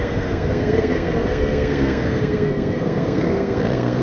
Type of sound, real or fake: fake